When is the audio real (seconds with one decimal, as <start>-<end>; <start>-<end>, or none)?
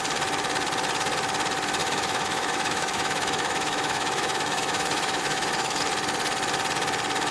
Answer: 0.0-1.8; 5.8-7.3